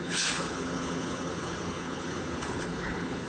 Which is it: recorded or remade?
remade